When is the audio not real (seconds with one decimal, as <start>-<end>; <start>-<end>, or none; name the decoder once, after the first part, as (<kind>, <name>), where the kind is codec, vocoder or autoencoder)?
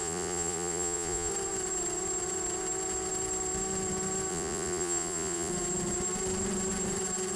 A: 0.0-1.3 (vocoder, Vocos); 4.3-5.5